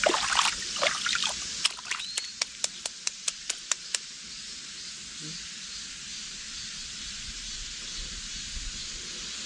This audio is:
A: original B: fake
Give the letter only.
A